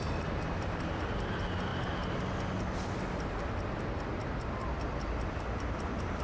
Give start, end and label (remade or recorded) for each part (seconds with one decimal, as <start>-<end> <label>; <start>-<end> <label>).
0.0-6.2 recorded